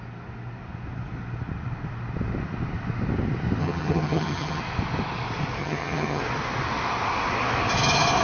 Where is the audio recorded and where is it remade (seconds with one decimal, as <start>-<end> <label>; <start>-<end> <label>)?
0.0-3.6 recorded; 3.6-4.6 remade; 4.6-5.6 recorded; 5.6-6.2 remade; 6.2-8.2 recorded